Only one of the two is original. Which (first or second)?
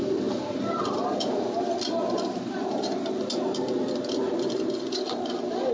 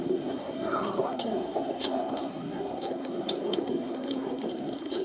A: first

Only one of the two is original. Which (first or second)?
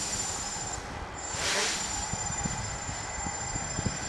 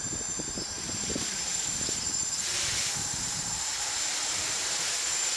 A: first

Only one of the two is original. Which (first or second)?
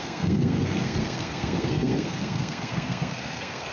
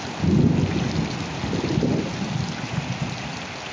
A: second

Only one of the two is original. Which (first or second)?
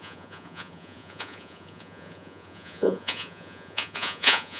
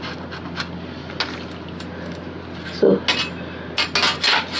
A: second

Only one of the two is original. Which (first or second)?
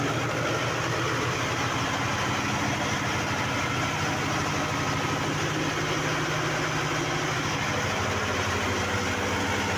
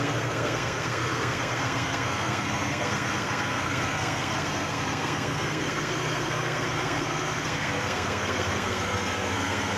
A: first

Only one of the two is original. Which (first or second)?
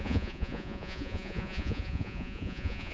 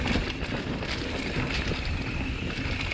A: second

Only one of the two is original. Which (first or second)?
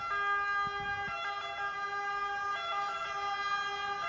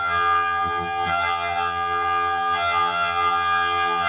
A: first